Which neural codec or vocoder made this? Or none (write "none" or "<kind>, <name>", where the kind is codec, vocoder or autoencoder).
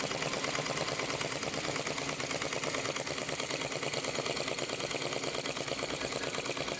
none